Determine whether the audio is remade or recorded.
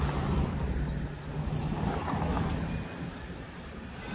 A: recorded